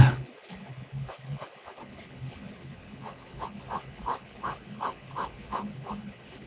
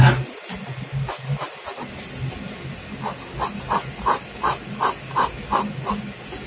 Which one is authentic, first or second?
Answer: second